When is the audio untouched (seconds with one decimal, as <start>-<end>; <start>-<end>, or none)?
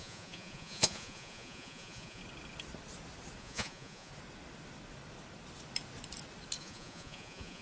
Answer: 2.2-3.4; 4.1-6.6